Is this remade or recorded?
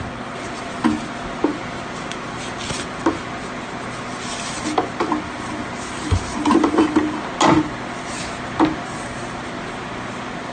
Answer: recorded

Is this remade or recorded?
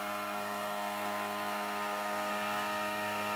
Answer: remade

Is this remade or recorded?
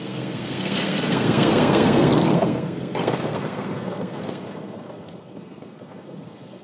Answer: remade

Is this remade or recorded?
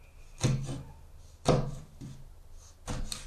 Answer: recorded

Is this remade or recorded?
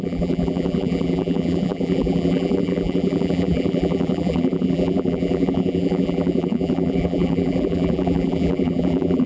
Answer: remade